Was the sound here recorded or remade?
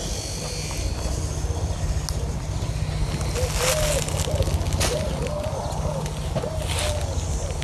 recorded